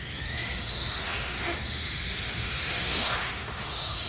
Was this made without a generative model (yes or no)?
no